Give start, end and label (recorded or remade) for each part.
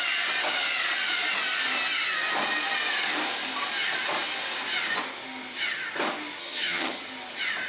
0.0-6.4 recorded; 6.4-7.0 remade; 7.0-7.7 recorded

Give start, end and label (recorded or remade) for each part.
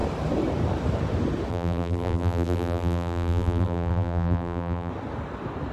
0.0-1.5 recorded; 1.5-4.9 remade; 4.9-5.7 recorded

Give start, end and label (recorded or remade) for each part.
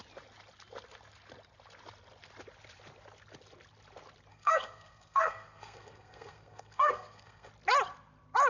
0.0-4.3 recorded; 4.3-7.5 remade; 7.5-8.5 recorded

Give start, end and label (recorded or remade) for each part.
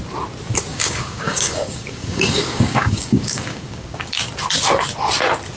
0.0-0.7 recorded; 0.7-4.1 remade; 4.1-5.6 recorded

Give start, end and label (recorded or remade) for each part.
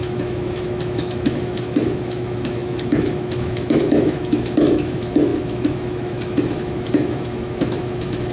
0.0-8.3 remade